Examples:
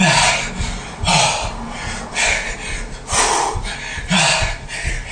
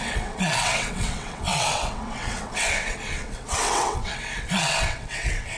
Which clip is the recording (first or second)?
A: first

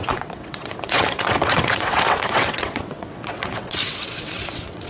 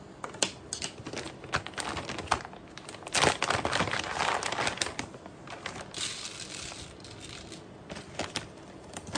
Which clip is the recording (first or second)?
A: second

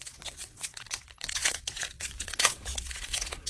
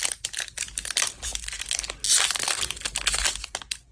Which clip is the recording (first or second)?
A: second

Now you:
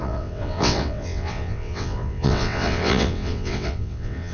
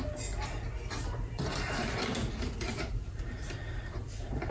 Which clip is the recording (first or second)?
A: second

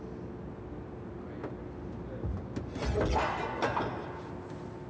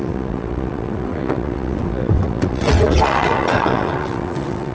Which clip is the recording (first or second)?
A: first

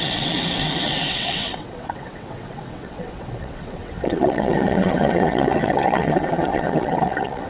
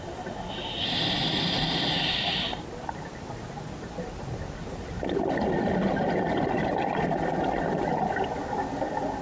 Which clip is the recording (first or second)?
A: second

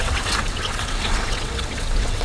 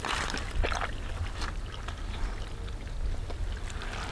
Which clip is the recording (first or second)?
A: second